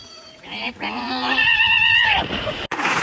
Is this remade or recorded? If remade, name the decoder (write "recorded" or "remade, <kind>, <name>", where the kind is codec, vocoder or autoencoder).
remade, vocoder, Vocos